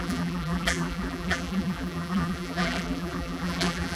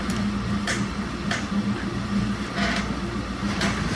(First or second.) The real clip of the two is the second